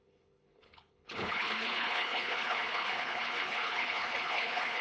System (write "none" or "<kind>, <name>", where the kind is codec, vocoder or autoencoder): codec, HILCodec